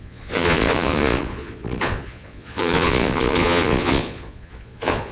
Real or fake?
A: fake